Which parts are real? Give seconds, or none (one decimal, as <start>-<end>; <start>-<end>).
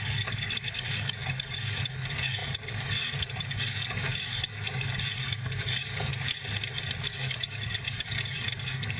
6.1-7.0